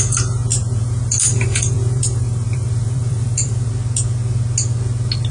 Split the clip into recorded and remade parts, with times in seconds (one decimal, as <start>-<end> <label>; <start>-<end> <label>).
0.0-0.5 recorded; 0.5-3.7 remade; 3.7-5.3 recorded